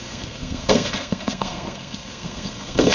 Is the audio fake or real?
fake